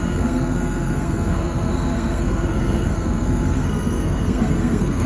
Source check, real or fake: fake